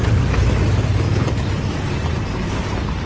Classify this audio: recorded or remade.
recorded